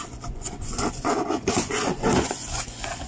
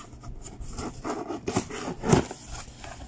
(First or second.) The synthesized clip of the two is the first